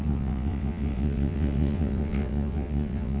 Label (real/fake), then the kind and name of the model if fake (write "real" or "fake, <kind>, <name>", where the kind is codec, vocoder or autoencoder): fake, vocoder, WaveNeXt